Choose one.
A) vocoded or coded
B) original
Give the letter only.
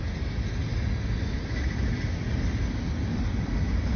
B